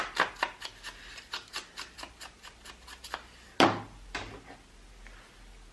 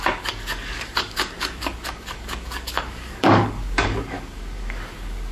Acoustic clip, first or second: first